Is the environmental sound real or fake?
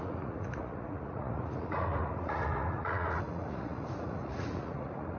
fake